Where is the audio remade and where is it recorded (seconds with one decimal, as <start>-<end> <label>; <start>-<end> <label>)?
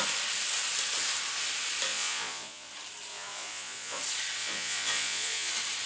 0.0-1.9 recorded; 1.9-2.7 remade; 2.7-3.1 recorded; 3.1-4.0 remade; 4.0-4.4 recorded; 4.4-5.5 remade; 5.5-5.9 recorded